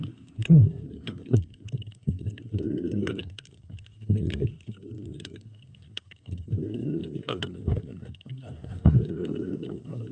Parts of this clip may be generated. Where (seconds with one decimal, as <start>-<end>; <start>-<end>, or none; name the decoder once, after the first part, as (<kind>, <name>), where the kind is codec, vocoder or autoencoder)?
0.0-10.1 (codec, SNAC)